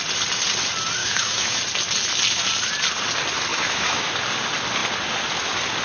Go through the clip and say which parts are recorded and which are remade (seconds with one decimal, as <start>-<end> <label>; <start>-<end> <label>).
0.0-1.0 recorded; 1.0-1.6 remade; 1.6-3.5 recorded; 3.5-4.1 remade; 4.1-5.8 recorded